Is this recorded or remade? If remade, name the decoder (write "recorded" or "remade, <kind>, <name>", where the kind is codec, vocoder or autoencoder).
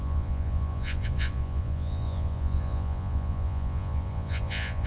remade, vocoder, Vocos